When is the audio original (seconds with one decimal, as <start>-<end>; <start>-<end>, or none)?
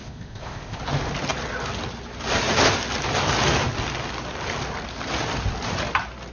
0.8-6.3